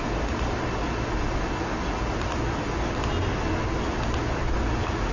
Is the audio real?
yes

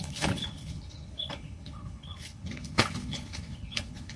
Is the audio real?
no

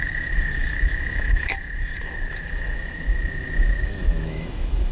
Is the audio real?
no